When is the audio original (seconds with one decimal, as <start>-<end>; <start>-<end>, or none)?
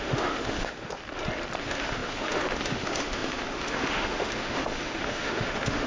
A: 1.0-1.6